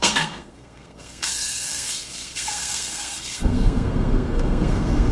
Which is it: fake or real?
fake